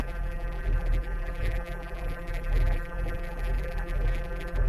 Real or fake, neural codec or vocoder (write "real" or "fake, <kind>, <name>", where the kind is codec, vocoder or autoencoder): fake, vocoder, BigVGAN v2